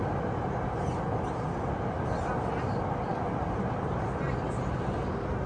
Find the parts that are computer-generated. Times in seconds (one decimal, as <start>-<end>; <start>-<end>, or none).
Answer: 3.1-3.6

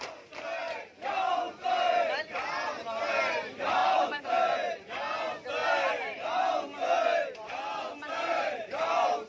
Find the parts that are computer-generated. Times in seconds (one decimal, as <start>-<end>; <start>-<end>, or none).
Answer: 0.6-1.3; 3.8-4.3; 5.6-6.4; 8.3-8.9

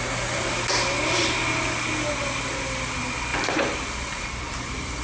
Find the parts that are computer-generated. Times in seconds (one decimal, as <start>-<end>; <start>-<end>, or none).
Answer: 3.3-5.0

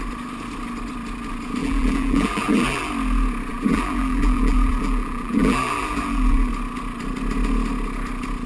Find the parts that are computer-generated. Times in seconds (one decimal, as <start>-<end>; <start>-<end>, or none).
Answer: 1.6-2.9; 3.5-6.5